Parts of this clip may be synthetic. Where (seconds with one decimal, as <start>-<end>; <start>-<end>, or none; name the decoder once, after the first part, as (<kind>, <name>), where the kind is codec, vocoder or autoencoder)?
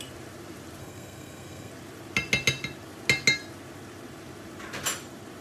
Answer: 0.8-1.7 (codec, SNAC)